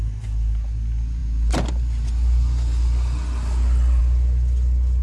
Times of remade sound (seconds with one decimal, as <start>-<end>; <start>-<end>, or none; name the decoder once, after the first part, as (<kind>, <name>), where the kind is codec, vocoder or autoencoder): none